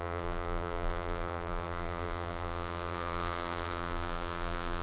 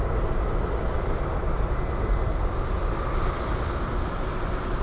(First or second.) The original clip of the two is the second